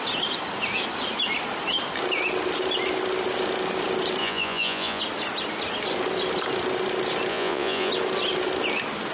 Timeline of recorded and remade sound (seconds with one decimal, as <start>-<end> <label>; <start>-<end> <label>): 0.0-4.2 recorded; 4.2-5.0 remade; 5.0-7.3 recorded; 7.3-7.9 remade; 7.9-9.1 recorded